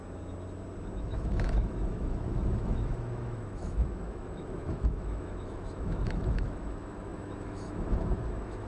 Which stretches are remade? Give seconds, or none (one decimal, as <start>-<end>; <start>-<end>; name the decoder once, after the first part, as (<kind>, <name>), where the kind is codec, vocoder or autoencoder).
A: 1.0-8.7 (autoencoder, DAC-VAE)